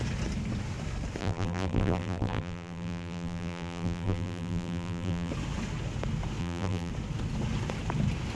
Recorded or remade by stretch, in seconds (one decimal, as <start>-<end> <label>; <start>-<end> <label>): 0.0-1.2 recorded; 1.2-5.3 remade; 5.3-6.4 recorded; 6.4-6.9 remade; 6.9-8.3 recorded